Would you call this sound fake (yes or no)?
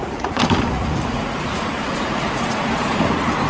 yes